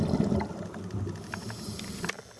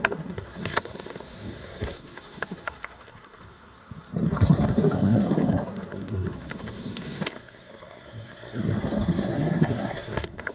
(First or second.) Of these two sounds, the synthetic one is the second